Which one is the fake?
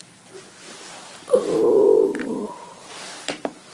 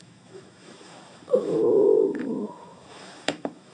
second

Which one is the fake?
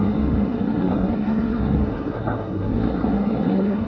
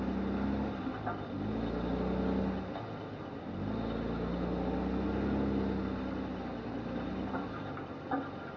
first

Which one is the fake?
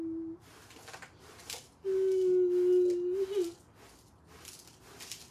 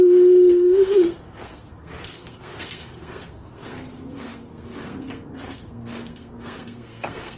second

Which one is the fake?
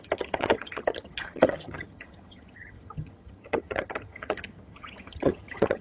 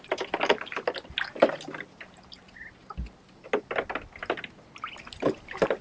first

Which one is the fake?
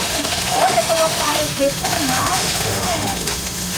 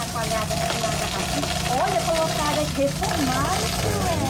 first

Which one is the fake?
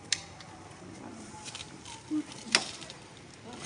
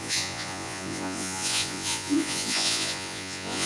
second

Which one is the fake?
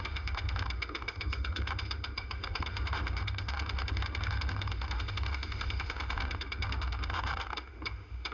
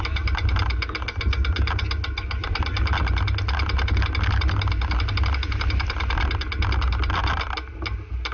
first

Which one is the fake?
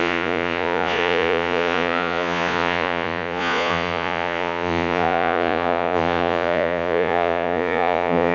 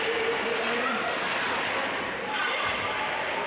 first